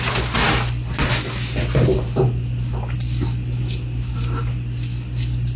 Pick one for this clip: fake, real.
real